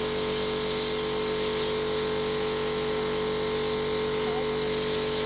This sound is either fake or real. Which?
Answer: real